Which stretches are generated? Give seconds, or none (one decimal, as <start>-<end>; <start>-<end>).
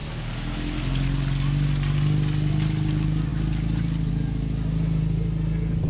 none